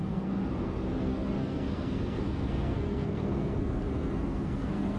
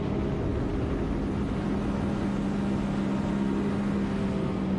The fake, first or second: first